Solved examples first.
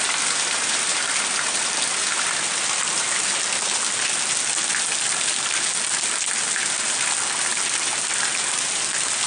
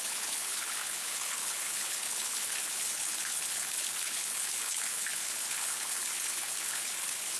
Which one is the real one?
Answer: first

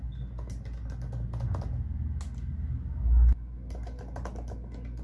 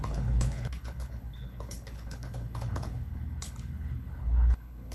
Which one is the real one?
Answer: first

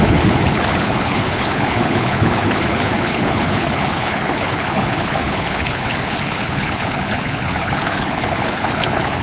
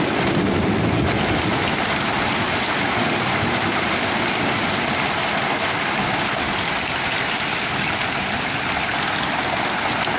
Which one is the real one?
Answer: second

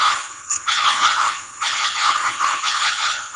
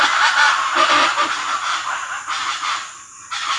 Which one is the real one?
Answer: second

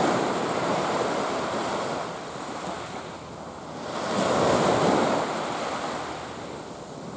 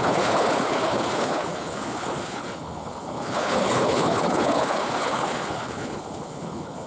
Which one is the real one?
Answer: first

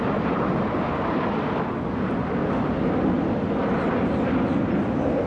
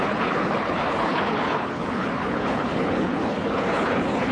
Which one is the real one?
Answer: first